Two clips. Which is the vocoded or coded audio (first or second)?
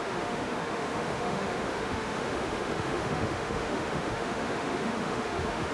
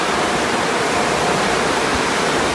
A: first